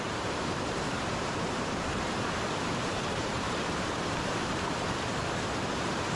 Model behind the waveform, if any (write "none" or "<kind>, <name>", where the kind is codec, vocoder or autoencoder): vocoder, BigVGAN v2